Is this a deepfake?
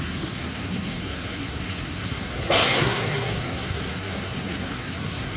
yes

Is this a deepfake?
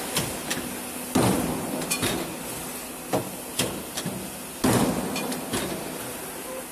no